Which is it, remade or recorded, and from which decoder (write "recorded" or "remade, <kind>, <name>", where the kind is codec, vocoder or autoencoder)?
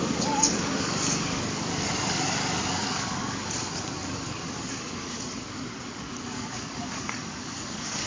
remade, codec, DAC